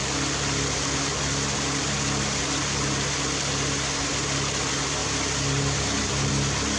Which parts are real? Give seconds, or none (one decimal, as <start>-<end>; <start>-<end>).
0.0-5.0; 6.3-6.8